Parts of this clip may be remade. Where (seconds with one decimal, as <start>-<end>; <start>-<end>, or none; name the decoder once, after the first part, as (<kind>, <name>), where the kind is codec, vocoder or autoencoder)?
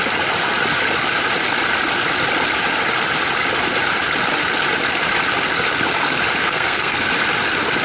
6.4-7.1 (codec, SNAC)